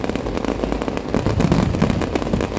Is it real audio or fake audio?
real